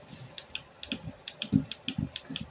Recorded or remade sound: recorded